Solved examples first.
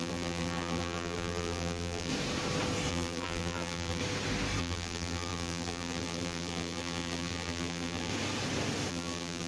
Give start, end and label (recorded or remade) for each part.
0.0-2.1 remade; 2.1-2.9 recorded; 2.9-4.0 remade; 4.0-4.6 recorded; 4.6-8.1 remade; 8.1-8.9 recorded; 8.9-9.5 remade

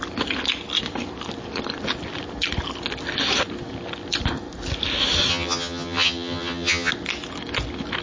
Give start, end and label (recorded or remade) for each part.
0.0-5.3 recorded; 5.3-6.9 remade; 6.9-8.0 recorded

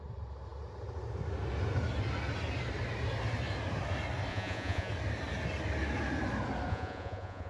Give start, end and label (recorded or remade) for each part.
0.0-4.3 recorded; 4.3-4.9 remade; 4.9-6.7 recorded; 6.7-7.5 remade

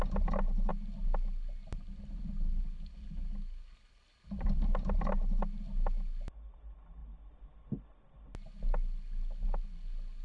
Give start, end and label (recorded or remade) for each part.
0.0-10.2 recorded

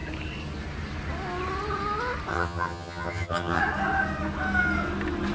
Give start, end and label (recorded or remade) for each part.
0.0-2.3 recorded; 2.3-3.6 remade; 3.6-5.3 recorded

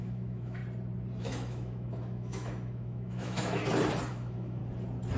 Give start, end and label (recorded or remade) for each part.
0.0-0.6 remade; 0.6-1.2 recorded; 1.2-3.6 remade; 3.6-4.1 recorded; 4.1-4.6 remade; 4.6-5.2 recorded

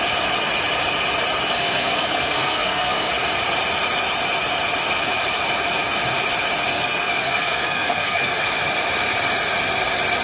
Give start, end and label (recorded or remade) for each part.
0.0-1.6 recorded; 1.6-3.1 remade; 3.1-6.7 recorded; 6.7-8.4 remade; 8.4-10.2 recorded

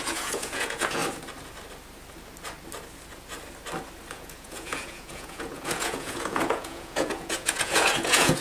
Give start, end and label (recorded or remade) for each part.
0.0-1.0 remade; 1.0-4.1 recorded; 4.1-8.4 remade